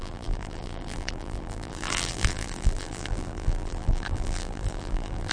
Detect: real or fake fake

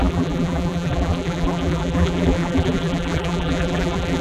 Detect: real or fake fake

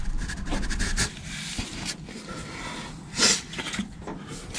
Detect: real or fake real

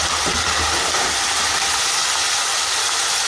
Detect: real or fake real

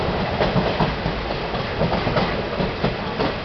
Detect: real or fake real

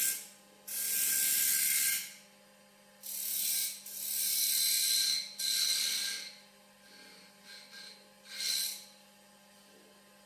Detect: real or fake real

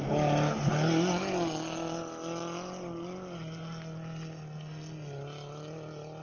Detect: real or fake real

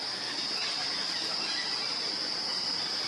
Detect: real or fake fake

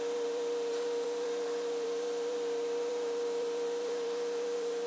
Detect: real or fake fake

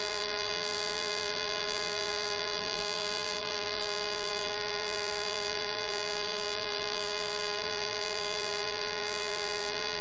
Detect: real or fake fake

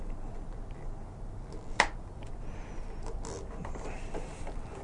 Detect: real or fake real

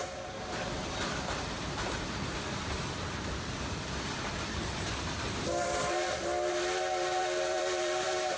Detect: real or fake fake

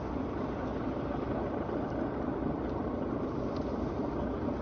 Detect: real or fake real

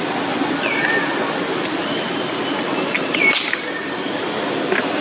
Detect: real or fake real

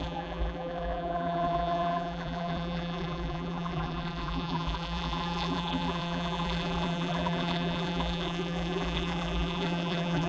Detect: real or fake fake